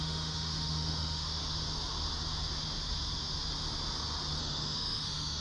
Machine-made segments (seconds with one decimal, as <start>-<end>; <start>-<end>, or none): 0.0-1.4; 4.4-5.4